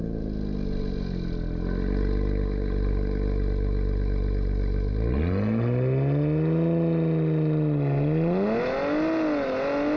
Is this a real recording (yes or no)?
yes